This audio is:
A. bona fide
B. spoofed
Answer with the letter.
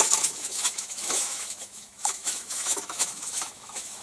B